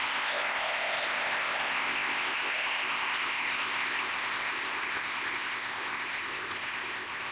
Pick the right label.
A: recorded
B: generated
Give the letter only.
B